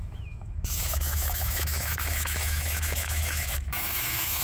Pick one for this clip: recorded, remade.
remade